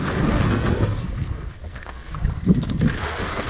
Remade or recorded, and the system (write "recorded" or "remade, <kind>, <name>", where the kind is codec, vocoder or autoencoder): remade, codec, SNAC